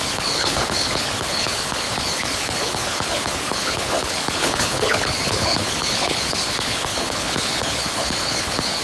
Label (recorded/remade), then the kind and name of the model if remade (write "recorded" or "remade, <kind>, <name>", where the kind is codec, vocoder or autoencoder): remade, codec, HILCodec